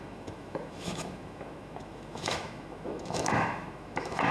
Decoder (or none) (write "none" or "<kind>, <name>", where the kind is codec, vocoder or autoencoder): autoencoder, DAC-VAE